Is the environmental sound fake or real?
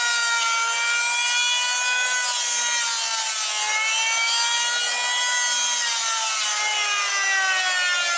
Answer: real